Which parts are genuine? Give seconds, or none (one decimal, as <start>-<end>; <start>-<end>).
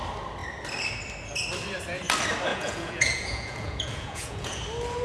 0.0-2.5; 4.6-5.0